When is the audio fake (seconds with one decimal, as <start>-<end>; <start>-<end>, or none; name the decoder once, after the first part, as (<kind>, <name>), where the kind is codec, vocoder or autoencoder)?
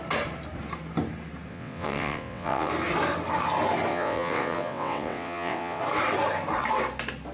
1.5-2.7 (vocoder, WaveNeXt); 3.9-5.8